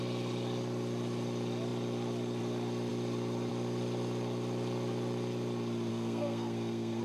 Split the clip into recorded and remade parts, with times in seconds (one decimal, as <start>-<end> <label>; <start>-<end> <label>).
0.0-5.9 recorded; 5.9-7.0 remade